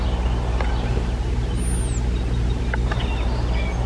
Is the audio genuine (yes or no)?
yes